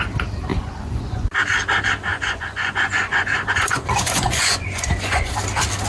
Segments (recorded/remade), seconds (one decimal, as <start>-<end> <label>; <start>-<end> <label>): 0.0-0.5 recorded; 0.5-1.3 remade; 1.3-2.1 recorded; 2.1-5.3 remade; 5.3-5.9 recorded